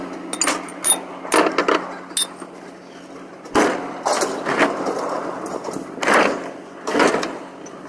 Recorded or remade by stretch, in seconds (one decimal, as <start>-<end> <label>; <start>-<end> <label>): 0.0-7.9 recorded